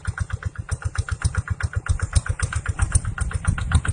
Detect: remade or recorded recorded